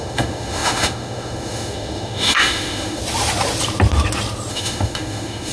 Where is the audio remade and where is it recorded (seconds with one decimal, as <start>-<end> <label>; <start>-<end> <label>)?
0.0-3.0 remade; 3.0-4.5 recorded; 4.5-5.5 remade